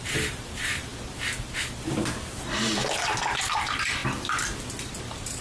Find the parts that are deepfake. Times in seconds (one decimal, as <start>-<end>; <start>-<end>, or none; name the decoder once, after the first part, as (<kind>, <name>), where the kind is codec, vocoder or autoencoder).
0.0-0.9 (vocoder, BigVGAN v2); 3.3-4.0; 5.0-5.4